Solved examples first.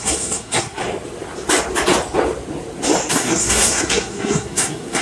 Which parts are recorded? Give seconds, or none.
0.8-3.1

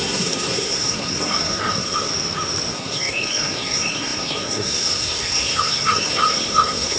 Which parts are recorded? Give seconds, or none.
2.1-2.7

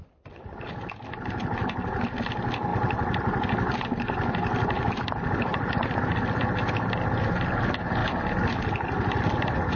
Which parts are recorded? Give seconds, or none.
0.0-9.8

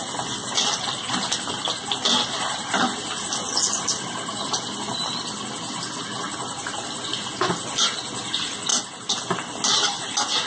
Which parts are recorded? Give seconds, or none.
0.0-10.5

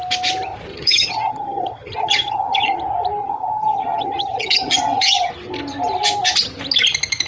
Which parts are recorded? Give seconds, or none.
0.0-0.7; 2.8-3.2; 5.3-7.3

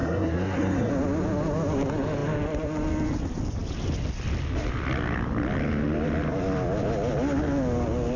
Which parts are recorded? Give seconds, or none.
0.9-8.2

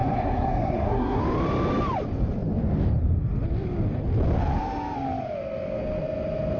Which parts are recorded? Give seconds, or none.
1.2-6.6